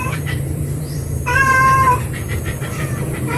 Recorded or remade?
remade